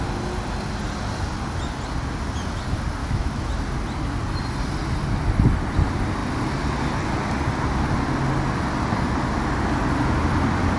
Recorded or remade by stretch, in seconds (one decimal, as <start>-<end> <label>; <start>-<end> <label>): 0.0-3.0 recorded; 3.0-3.5 remade; 3.5-10.8 recorded